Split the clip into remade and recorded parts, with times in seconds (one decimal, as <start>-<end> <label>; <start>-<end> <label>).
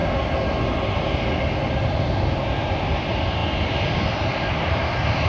0.0-1.7 recorded; 1.7-3.4 remade; 3.4-4.5 recorded; 4.5-5.3 remade